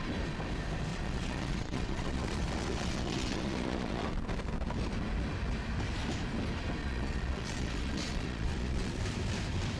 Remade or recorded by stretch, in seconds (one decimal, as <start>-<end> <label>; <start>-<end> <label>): 0.0-0.9 recorded; 0.9-4.1 remade; 4.1-6.8 recorded; 6.8-9.0 remade; 9.0-9.8 recorded